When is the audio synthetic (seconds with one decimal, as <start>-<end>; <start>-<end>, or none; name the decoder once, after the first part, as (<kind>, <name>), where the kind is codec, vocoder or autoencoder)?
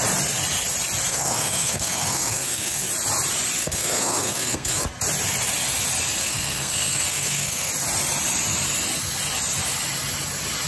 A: 1.1-2.9 (codec, SNAC); 3.6-4.9; 6.2-7.7